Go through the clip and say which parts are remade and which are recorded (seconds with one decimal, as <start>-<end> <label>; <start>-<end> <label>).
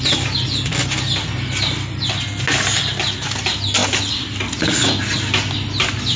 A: 0.0-6.2 recorded